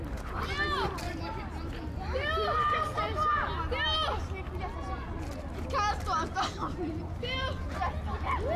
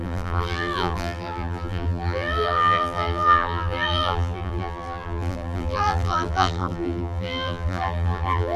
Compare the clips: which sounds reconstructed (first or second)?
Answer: second